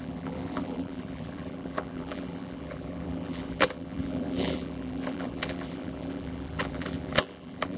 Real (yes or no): no